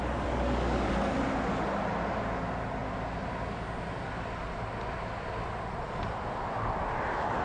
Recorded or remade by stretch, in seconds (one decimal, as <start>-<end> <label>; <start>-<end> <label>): 0.0-1.2 remade; 1.2-7.4 recorded